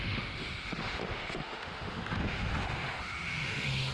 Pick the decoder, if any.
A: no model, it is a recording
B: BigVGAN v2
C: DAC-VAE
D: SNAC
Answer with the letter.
C